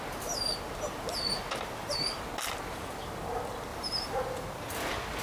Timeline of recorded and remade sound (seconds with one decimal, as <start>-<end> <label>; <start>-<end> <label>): 0.0-1.8 recorded; 1.8-2.3 remade; 2.3-3.7 recorded; 3.7-4.2 remade; 4.2-5.2 recorded